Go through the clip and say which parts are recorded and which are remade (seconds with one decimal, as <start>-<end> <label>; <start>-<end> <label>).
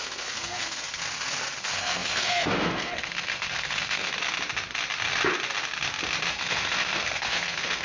0.0-1.0 remade; 1.0-1.6 recorded; 1.6-4.1 remade; 4.1-6.3 recorded; 6.3-7.8 remade